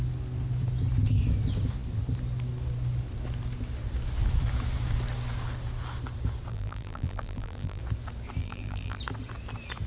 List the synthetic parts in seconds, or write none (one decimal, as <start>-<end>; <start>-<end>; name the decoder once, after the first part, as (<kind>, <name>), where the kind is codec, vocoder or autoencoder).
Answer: 6.5-7.8 (vocoder, BigVGAN v2); 8.4-9.0